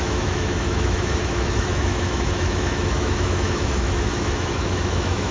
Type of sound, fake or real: fake